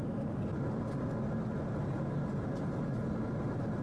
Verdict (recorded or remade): recorded